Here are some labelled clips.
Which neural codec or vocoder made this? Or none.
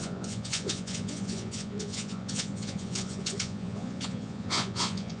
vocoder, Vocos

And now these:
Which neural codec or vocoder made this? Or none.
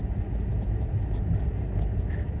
none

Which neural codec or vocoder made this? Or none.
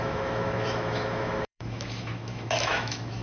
autoencoder, DAC-VAE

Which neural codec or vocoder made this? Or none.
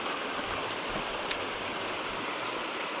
none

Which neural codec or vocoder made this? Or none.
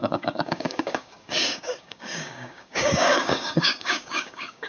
codec, DAC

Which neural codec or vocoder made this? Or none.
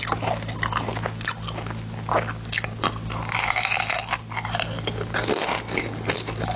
none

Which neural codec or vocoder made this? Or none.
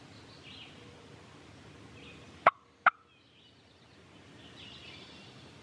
none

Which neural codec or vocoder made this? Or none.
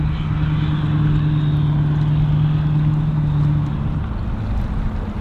none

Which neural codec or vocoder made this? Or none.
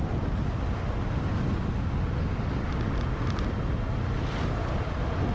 none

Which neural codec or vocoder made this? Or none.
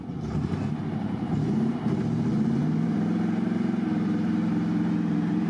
vocoder, BigVGAN v2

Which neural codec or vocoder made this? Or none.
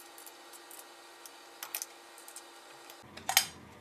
none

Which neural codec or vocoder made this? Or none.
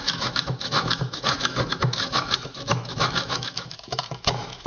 autoencoder, DAC-VAE